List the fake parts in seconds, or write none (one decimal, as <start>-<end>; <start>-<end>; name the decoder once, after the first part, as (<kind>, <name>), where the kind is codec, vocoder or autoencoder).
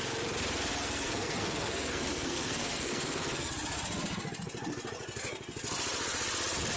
0.7-3.5 (codec, SNAC)